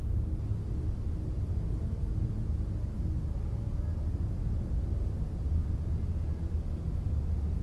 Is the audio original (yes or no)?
yes